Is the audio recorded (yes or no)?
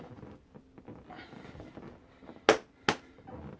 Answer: yes